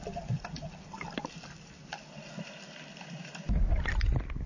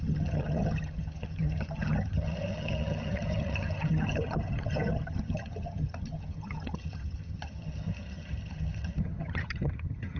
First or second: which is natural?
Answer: first